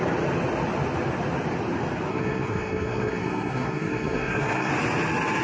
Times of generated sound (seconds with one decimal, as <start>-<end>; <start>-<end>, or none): 2.1-4.7